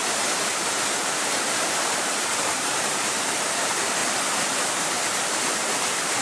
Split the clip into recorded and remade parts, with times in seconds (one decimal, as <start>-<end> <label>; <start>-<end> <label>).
0.0-1.4 recorded; 1.4-4.0 remade; 4.0-4.8 recorded; 4.8-6.2 remade